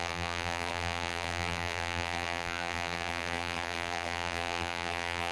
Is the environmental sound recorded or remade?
remade